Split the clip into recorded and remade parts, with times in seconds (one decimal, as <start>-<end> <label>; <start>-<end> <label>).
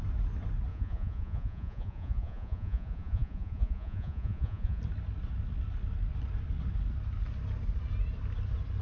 0.0-0.7 recorded; 0.7-4.8 remade; 4.8-8.8 recorded